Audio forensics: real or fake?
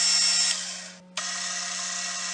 real